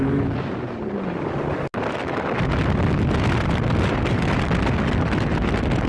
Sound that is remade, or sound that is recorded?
recorded